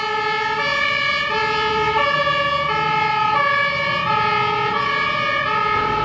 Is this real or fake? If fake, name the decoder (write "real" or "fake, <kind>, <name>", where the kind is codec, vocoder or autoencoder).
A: real